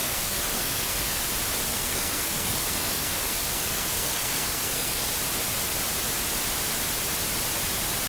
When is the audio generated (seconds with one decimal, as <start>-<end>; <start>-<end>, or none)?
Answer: 0.0-1.2; 1.7-5.1